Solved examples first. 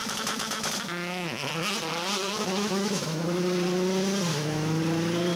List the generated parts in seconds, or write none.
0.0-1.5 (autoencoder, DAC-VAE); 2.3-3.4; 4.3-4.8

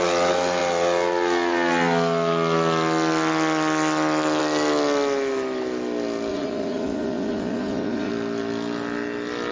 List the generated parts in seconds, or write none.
6.3-8.1 (vocoder, Vocos)

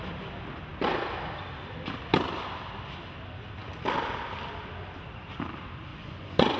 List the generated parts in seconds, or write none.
5.9-6.6 (vocoder, Vocos)

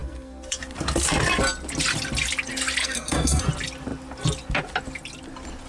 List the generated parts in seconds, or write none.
0.0-0.6 (codec, SNAC); 2.8-3.4

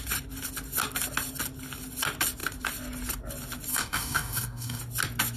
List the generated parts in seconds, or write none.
3.7-4.8 (codec, DAC)

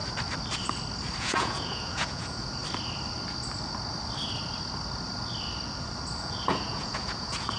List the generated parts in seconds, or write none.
1.2-2.6 (vocoder, Vocos); 6.2-7.6